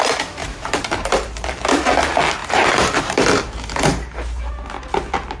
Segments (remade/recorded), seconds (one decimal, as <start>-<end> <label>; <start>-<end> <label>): 0.0-0.4 recorded; 0.4-1.7 remade; 1.7-2.4 recorded; 2.4-4.5 remade; 4.5-5.4 recorded